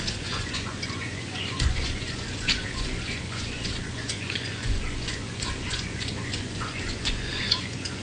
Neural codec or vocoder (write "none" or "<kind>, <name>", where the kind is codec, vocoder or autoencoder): vocoder, Vocos